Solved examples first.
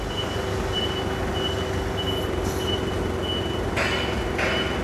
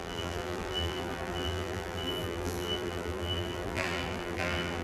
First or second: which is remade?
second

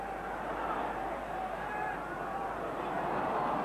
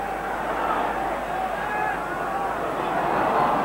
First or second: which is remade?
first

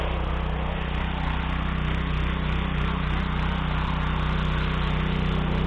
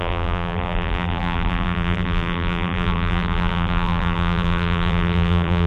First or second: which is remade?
second